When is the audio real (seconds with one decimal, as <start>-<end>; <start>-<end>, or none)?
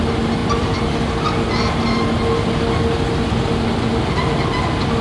0.0-0.4; 1.1-5.0